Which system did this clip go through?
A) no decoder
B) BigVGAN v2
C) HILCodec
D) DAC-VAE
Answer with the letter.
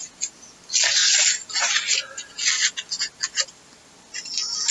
A